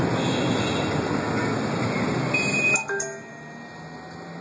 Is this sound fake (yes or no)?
no